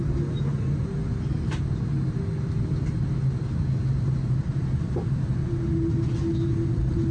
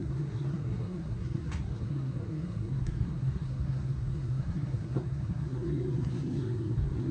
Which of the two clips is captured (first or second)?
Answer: first